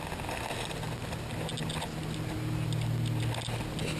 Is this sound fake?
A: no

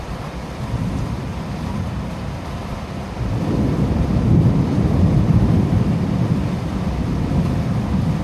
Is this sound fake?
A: yes